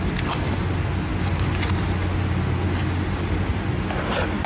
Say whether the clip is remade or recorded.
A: recorded